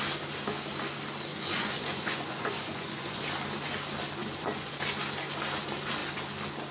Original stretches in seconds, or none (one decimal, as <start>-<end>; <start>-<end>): 0.0-1.3; 3.2-4.2; 4.7-6.7